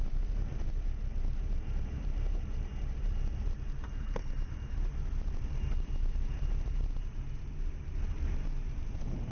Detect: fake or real fake